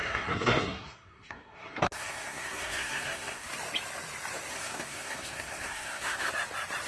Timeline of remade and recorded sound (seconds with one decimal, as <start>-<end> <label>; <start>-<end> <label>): 0.0-3.5 remade; 3.5-4.5 recorded; 4.5-6.3 remade; 6.3-6.9 recorded